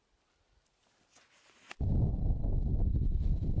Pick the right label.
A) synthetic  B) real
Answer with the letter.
B